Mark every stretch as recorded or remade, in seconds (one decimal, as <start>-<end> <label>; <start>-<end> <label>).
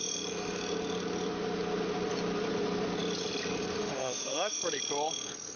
0.0-3.8 recorded; 3.8-4.6 remade; 4.6-5.6 recorded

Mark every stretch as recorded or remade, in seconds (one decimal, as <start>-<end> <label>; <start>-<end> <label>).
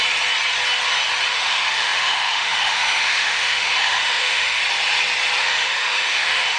0.0-1.3 recorded; 1.3-4.6 remade; 4.6-5.4 recorded; 5.4-6.6 remade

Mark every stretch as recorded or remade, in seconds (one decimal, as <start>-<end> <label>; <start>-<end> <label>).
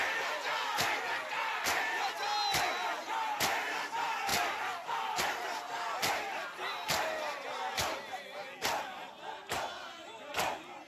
0.0-10.9 recorded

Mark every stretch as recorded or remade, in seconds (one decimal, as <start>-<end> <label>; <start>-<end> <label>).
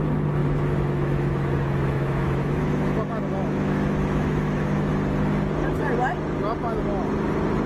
0.0-0.4 recorded; 0.4-4.9 remade; 4.9-7.7 recorded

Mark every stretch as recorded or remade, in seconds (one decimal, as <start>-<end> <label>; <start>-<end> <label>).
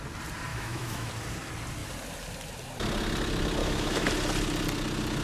0.0-0.5 recorded; 0.5-1.1 remade; 1.1-3.6 recorded; 3.6-4.1 remade; 4.1-5.2 recorded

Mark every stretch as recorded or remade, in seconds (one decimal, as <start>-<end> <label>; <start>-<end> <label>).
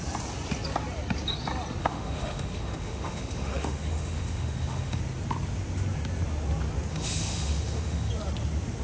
0.0-1.8 recorded; 1.8-5.0 remade; 5.0-6.9 recorded; 6.9-8.1 remade; 8.1-8.8 recorded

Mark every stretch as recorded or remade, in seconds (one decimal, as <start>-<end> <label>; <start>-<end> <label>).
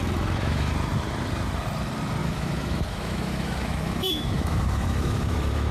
0.0-0.7 remade; 0.7-2.2 recorded; 2.2-5.7 remade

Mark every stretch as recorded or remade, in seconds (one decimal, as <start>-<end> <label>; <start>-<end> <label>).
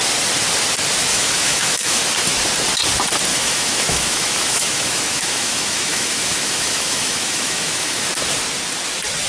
0.0-1.1 recorded; 1.1-2.0 remade; 2.0-3.3 recorded; 3.3-8.1 remade; 8.1-9.3 recorded